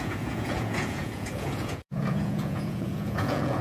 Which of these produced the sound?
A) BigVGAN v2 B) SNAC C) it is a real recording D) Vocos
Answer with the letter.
D